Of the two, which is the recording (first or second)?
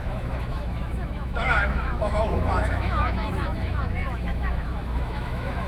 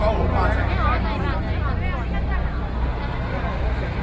second